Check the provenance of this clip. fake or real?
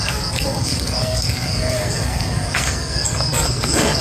fake